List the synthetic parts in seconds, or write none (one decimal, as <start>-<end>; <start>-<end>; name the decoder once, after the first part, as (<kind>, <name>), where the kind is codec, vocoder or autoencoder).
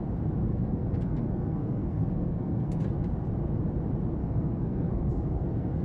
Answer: 0.4-2.8 (codec, SNAC); 4.2-5.8